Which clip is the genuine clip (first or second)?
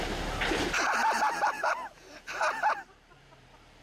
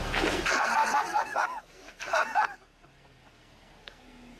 first